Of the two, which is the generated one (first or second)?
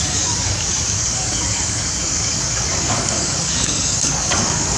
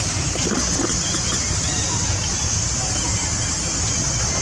first